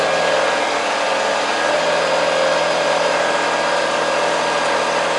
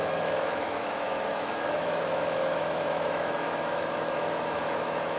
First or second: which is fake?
second